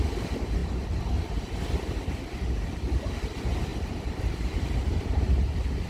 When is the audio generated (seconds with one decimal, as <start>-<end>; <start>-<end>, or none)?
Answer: none